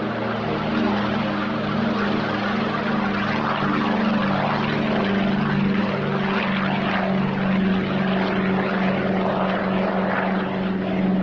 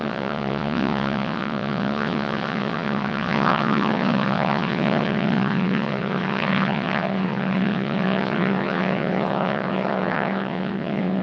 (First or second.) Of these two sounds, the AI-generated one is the second